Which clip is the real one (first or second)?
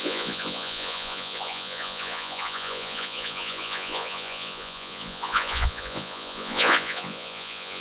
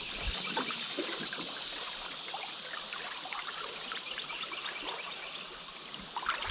second